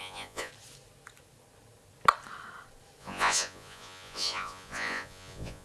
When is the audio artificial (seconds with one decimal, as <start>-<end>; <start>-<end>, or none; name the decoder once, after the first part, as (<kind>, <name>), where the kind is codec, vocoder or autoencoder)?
0.0-0.5 (vocoder, Vocos); 3.0-5.6